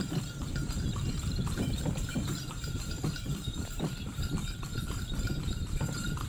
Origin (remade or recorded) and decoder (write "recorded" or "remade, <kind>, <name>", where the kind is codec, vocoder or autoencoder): remade, vocoder, BigVGAN v2